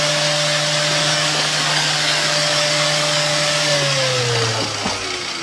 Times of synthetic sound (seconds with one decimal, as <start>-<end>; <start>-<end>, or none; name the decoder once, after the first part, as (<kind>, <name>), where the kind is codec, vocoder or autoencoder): 1.0-4.2 (codec, DAC)